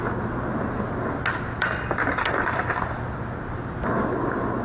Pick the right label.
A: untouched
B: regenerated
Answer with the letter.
A